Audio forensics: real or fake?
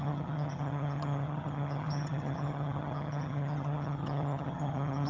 fake